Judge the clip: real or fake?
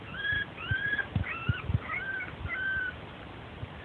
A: real